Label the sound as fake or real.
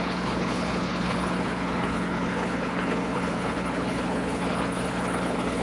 fake